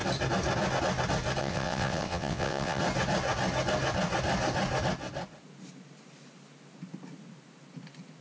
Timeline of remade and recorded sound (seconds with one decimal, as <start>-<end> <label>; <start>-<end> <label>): 0.0-1.4 recorded; 1.4-2.8 remade; 2.8-8.2 recorded